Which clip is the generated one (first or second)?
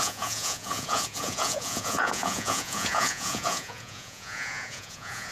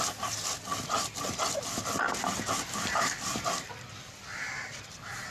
first